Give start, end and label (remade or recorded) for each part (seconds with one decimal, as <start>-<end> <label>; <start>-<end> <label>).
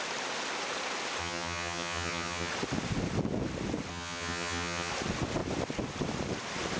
0.0-1.2 recorded; 1.2-2.5 remade; 2.5-3.9 recorded; 3.9-4.9 remade; 4.9-6.8 recorded